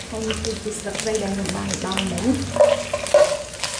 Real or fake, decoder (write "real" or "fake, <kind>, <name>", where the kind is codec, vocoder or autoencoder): real